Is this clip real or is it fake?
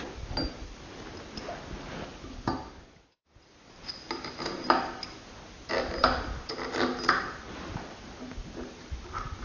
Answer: real